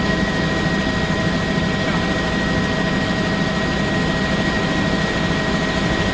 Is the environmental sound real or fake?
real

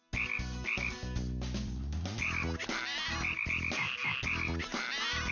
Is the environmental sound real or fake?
real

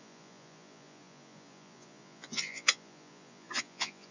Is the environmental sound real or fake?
fake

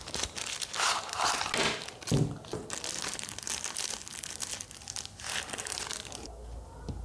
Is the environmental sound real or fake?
real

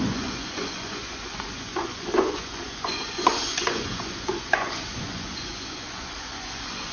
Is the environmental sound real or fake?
fake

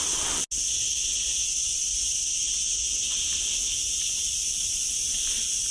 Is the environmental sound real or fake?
real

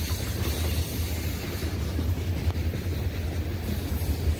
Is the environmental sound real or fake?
real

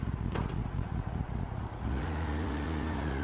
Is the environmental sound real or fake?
fake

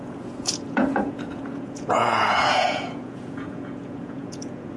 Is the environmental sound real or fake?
fake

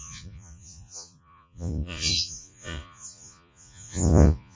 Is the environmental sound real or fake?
fake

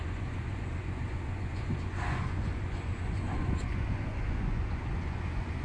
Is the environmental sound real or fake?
fake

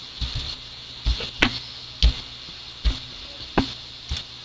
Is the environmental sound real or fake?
real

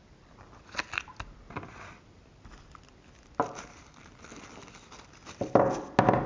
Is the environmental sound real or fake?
real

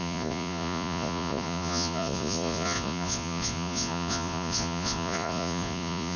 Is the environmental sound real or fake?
fake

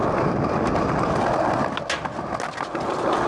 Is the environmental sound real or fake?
real